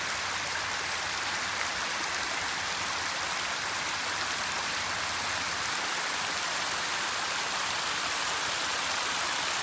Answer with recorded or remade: recorded